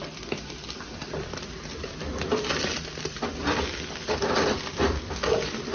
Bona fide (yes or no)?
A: no